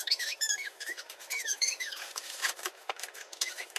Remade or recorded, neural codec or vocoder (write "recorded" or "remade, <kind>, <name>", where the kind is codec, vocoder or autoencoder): remade, autoencoder, DAC-VAE